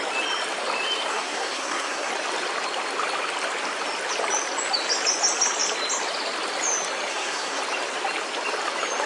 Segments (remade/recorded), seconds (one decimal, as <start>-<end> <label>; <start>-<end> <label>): 0.0-1.1 recorded; 1.1-2.1 remade; 2.1-7.1 recorded; 7.1-7.6 remade; 7.6-9.1 recorded